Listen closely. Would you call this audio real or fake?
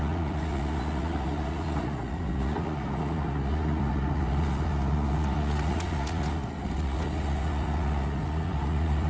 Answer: fake